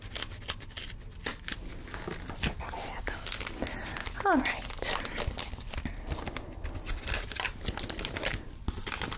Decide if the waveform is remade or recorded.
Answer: recorded